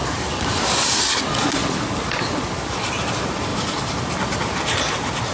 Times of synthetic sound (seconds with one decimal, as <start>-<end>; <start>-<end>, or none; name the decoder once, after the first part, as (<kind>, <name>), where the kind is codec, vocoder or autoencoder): 0.0-2.4 (vocoder, BigVGAN v2); 3.5-4.1